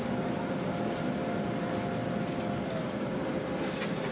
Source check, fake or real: real